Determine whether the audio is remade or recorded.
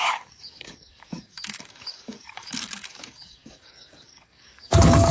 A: remade